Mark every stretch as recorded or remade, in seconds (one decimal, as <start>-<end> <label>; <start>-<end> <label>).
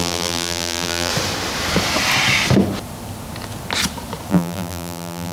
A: 0.0-1.1 remade; 1.1-4.3 recorded; 4.3-5.3 remade